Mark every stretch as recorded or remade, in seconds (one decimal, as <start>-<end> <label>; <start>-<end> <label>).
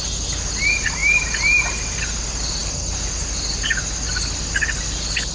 0.0-5.3 recorded